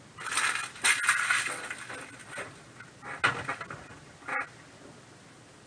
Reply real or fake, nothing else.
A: real